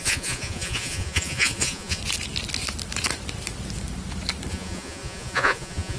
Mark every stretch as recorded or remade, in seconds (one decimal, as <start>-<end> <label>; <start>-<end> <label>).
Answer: 0.0-2.0 remade; 2.0-4.5 recorded; 4.5-6.0 remade

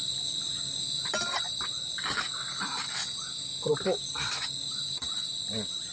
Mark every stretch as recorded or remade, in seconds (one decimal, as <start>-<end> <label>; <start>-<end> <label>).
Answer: 0.0-5.9 recorded

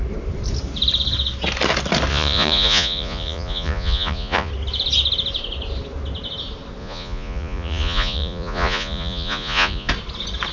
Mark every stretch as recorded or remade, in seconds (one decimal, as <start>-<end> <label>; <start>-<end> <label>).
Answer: 0.0-2.1 recorded; 2.1-4.5 remade; 4.5-6.8 recorded; 6.8-9.9 remade; 9.9-10.5 recorded

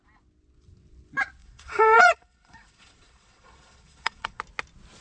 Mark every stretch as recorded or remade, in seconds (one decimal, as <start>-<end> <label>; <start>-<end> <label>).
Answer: 0.0-1.4 recorded; 1.4-4.4 remade; 4.4-5.0 recorded

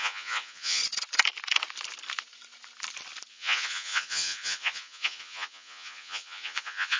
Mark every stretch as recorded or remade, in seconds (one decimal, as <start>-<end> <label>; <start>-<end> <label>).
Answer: 0.0-0.8 remade; 0.8-3.3 recorded; 3.3-7.0 remade

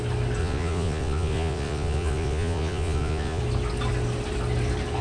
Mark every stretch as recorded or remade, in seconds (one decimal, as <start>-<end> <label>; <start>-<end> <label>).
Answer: 0.0-0.4 recorded; 0.4-3.4 remade; 3.4-5.0 recorded

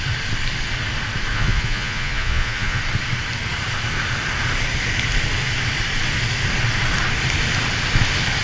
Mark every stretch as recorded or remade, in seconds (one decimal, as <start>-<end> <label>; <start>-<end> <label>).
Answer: 0.0-1.3 recorded; 1.3-2.8 remade; 2.8-8.4 recorded

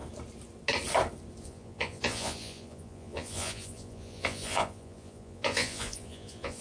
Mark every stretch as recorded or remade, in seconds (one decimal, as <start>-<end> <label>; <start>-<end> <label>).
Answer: 0.0-1.4 recorded; 1.4-6.6 remade